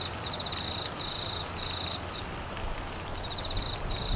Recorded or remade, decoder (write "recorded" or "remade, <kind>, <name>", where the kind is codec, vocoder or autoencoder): recorded